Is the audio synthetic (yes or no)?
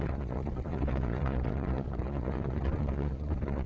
yes